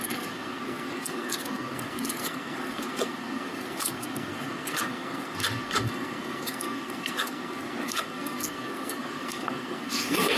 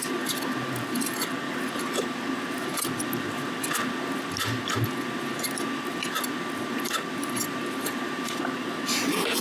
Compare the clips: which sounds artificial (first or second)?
first